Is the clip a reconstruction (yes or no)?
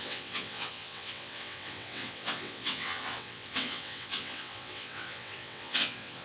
yes